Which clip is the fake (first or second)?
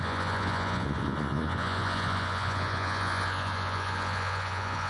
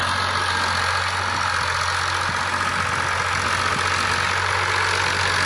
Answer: first